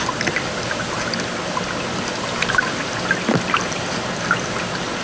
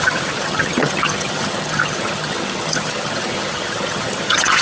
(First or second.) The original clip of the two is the first